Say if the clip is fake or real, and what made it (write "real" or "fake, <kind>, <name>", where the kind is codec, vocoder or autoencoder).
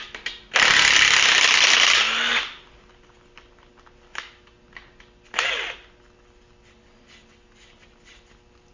real